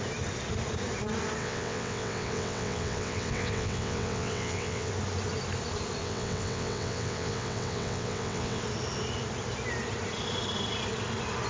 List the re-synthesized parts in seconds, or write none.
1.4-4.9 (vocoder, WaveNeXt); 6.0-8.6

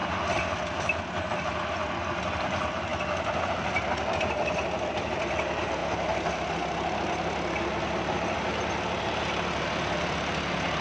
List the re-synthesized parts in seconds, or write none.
none